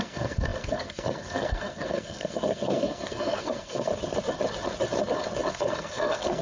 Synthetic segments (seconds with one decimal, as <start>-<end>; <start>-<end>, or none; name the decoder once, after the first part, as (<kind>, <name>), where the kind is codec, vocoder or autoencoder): 0.0-3.9 (codec, SNAC); 5.5-6.4